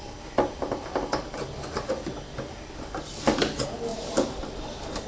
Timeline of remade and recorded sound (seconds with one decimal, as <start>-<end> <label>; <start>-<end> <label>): 0.0-5.1 recorded